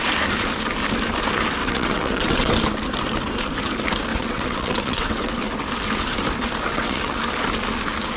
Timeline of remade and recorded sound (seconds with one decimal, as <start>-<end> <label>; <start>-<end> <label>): 0.0-1.6 recorded; 1.6-2.5 remade; 2.5-4.1 recorded; 4.1-5.3 remade; 5.3-6.7 recorded; 6.7-7.2 remade; 7.2-8.2 recorded